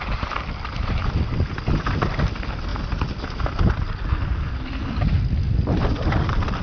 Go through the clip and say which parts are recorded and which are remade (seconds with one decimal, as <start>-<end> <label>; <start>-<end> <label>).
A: 0.0-6.6 recorded